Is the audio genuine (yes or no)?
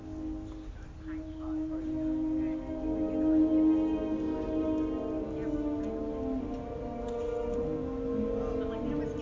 yes